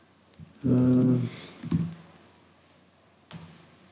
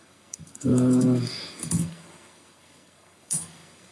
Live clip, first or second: first